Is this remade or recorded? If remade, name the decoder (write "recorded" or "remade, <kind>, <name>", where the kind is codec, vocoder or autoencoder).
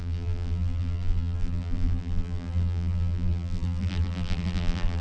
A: remade, vocoder, BigVGAN v2